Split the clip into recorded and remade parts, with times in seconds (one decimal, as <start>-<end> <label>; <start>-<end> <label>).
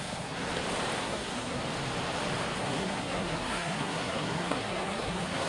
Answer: 0.0-0.5 remade; 0.5-1.0 recorded; 1.0-1.6 remade; 1.6-2.6 recorded; 2.6-5.5 remade